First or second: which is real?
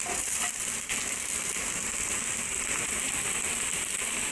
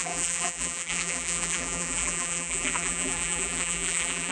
first